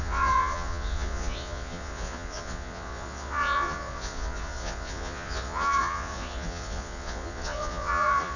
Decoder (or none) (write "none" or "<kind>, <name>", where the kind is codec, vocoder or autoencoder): vocoder, Vocos